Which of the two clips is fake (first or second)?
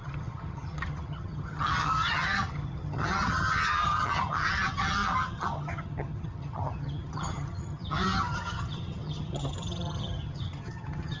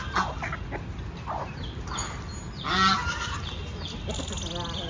first